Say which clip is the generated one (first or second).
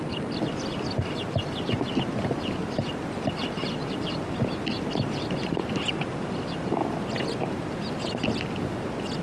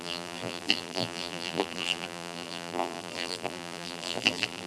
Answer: second